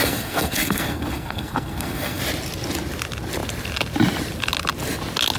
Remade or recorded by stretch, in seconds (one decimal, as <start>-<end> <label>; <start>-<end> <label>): 0.0-2.2 remade; 2.2-5.4 recorded